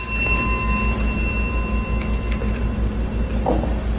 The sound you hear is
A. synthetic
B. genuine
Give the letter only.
B